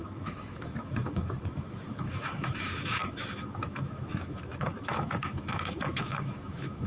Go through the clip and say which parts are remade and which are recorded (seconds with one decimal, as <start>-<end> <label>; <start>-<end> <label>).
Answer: 0.0-6.9 remade